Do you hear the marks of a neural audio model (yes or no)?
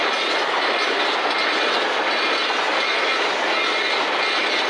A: no